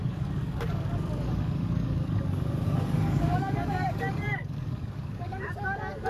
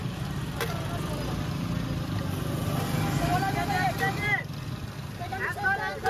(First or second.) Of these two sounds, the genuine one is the second